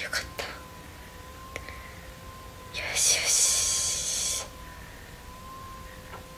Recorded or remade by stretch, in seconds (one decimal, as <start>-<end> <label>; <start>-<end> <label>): 0.0-2.9 recorded; 2.9-3.5 remade; 3.5-6.4 recorded